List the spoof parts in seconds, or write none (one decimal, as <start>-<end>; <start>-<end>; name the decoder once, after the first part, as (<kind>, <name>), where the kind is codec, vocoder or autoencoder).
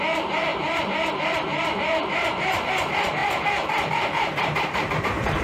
0.5-1.1 (vocoder, BigVGAN v2); 1.5-2.7; 3.2-5.4